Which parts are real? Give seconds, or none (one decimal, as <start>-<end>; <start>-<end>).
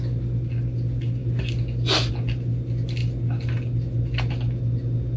0.0-5.2